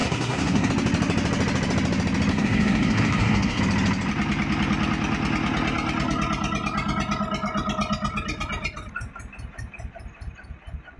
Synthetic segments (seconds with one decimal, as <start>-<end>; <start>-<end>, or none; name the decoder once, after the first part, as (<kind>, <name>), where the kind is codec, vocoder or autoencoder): 0.0-0.7 (codec, SNAC); 2.3-3.6